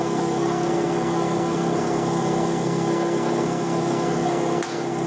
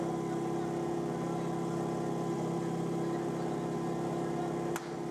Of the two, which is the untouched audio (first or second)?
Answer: second